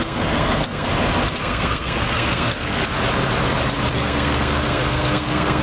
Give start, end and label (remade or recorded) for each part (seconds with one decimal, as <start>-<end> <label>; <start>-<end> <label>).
0.0-0.9 remade; 0.9-1.4 recorded; 1.4-2.8 remade; 2.8-3.9 recorded; 3.9-5.6 remade